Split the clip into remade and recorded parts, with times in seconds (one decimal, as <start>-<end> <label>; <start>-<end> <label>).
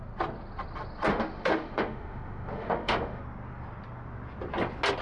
0.0-1.1 recorded; 1.1-3.2 remade; 3.2-5.0 recorded